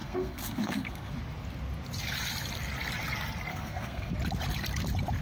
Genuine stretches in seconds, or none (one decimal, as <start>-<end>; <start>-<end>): 1.1-3.5; 4.1-5.2